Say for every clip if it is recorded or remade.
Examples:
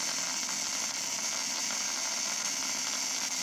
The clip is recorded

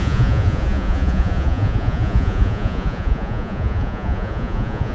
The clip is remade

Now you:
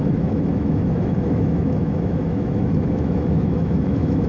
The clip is remade